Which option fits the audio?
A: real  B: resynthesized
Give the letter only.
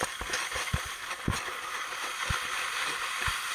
A